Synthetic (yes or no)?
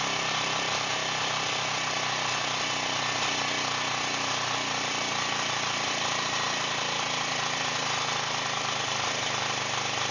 no